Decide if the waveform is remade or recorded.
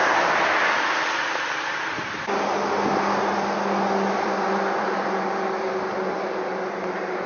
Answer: recorded